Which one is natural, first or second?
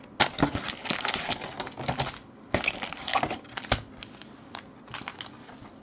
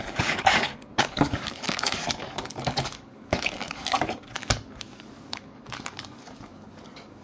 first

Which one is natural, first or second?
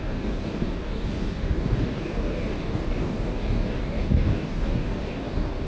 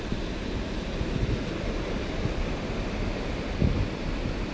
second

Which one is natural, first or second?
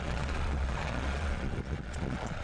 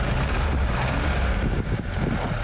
second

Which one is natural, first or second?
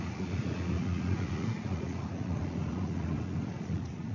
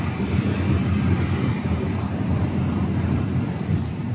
second